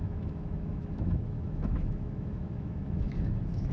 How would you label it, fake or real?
fake